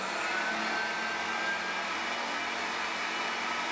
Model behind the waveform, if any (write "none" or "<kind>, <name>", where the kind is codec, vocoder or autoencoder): none